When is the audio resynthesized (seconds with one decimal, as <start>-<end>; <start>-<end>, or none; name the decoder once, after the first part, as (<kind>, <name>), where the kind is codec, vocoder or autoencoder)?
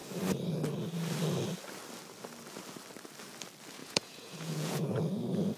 3.8-5.0 (vocoder, Vocos)